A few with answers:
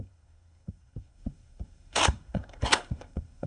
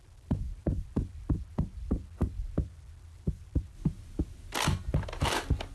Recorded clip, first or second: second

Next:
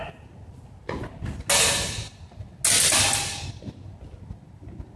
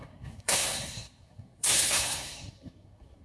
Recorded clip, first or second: first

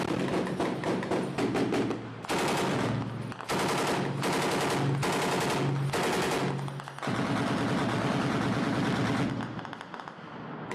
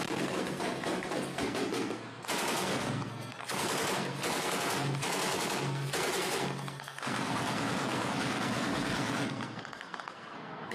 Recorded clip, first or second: first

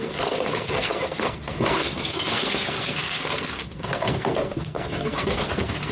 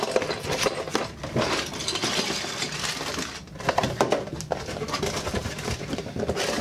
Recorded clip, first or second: second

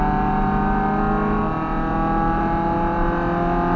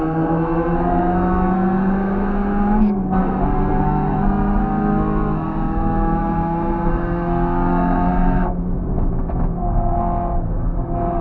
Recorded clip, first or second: first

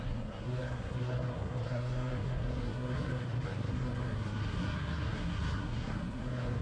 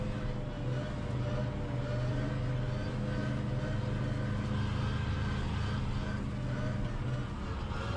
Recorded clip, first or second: second